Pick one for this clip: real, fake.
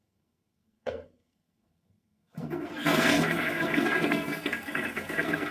fake